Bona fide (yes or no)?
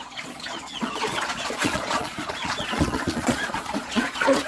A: no